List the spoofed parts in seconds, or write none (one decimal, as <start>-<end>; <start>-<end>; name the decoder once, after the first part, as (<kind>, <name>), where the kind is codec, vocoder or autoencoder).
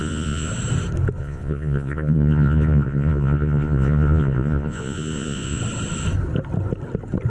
0.0-0.5 (vocoder, Vocos); 1.2-5.6